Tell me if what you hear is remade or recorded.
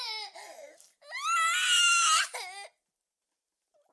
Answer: recorded